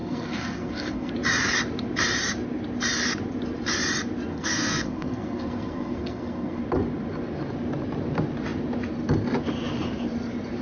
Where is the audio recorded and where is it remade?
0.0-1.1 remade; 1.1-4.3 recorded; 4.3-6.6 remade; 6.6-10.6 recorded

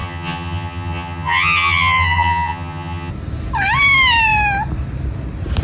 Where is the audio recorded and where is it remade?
0.0-3.1 remade; 3.1-5.6 recorded

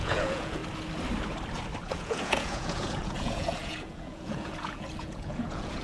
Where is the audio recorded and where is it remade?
0.0-0.6 remade; 0.6-1.9 recorded; 1.9-5.8 remade

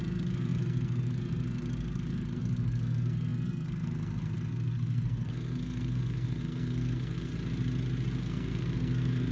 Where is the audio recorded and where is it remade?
0.0-7.3 remade; 7.3-8.2 recorded; 8.2-9.3 remade

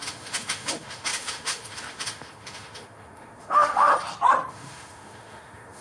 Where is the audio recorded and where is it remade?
0.0-3.9 remade; 3.9-4.5 recorded; 4.5-5.8 remade

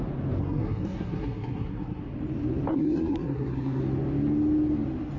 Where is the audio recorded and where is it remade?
0.0-0.4 recorded; 0.4-2.0 remade; 2.0-2.7 recorded; 2.7-3.8 remade; 3.8-5.2 recorded

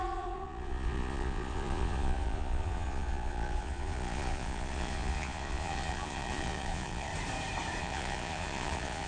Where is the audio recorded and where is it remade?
0.0-7.1 remade; 7.1-7.8 recorded; 7.8-9.1 remade

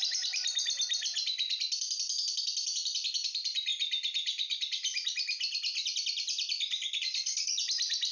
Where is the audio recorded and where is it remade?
0.0-8.1 recorded